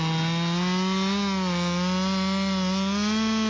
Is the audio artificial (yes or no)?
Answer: no